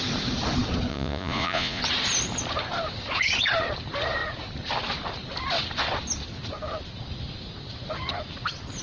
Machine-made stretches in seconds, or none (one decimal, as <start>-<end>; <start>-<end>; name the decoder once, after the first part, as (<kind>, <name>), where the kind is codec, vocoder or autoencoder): 0.9-1.8 (vocoder, Vocos)